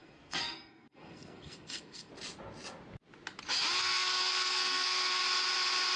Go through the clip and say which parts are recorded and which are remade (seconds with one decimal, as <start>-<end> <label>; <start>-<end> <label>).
0.0-2.1 remade; 2.1-3.8 recorded; 3.8-5.2 remade; 5.2-6.0 recorded